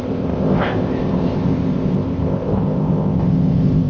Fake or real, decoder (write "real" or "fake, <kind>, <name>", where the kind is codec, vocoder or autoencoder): fake, codec, ZipCodec